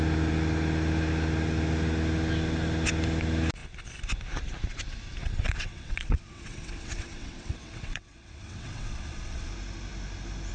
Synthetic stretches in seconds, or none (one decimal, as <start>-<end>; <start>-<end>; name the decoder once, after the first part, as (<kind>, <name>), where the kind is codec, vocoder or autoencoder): 5.2-9.5 (vocoder, WaveNeXt)